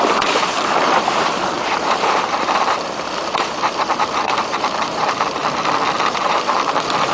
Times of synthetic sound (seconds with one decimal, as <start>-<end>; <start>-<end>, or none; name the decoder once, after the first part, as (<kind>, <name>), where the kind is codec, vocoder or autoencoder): 0.0-5.4 (vocoder, BigVGAN v2); 6.1-7.1